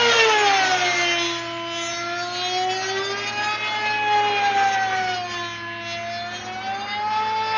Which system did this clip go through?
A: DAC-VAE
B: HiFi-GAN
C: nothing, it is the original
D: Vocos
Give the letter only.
C